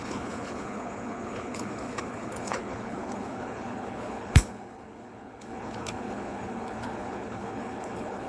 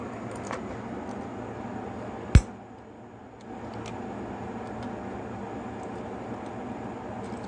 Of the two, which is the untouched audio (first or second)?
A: second